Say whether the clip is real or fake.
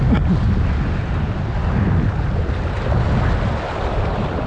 real